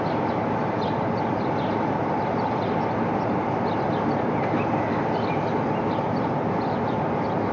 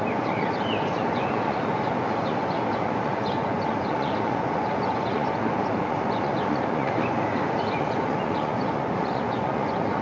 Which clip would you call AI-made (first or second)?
second